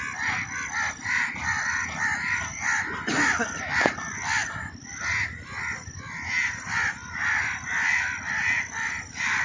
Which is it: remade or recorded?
remade